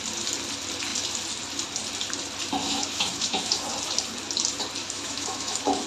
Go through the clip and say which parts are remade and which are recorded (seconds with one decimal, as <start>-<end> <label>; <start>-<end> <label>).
0.0-2.6 recorded; 2.6-3.7 remade; 3.7-4.8 recorded; 4.8-5.9 remade